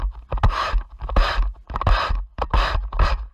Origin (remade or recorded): recorded